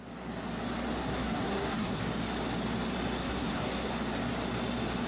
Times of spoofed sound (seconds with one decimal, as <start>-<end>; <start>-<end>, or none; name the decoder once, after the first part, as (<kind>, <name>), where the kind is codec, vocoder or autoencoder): 1.0-2.0 (codec, SNAC); 3.2-3.9